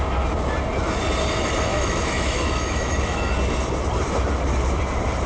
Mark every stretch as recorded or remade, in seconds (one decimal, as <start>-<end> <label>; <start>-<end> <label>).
0.0-1.7 recorded; 1.7-3.3 remade; 3.3-5.3 recorded